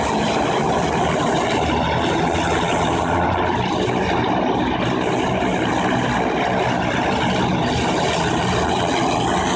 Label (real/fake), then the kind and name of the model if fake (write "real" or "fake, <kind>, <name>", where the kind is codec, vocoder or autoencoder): real